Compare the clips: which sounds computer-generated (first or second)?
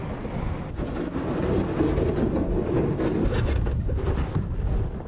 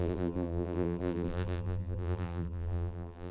second